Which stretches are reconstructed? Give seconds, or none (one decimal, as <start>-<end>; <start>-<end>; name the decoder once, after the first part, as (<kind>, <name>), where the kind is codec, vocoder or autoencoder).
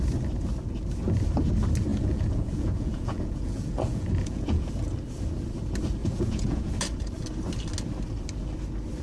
1.9-4.7 (vocoder, Vocos); 6.0-6.7